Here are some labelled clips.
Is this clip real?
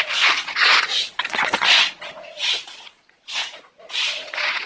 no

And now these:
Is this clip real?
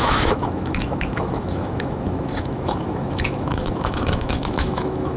no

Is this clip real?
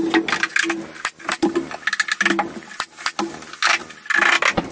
yes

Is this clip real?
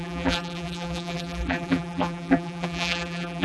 no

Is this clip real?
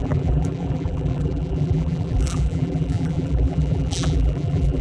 no